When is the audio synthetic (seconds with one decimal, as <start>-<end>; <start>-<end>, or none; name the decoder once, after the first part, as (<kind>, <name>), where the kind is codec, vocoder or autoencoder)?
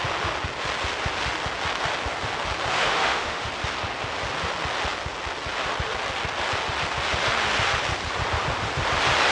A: 2.7-3.5 (autoencoder, DAC-VAE)